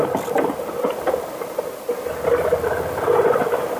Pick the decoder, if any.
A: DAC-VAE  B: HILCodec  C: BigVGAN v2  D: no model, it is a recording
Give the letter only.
D